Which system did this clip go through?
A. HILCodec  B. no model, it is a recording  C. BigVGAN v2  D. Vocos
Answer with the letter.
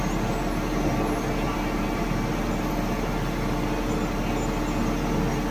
B